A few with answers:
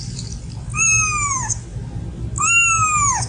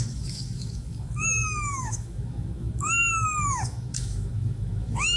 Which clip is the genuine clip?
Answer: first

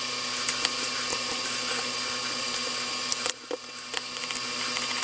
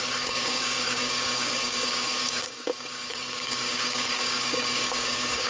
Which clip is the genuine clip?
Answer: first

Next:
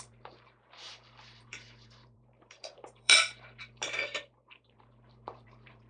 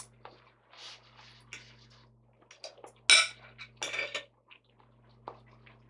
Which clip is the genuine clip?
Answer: second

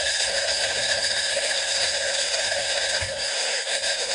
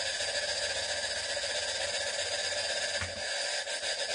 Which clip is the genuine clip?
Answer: second